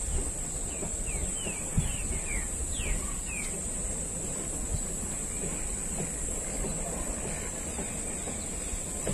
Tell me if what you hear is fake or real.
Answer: real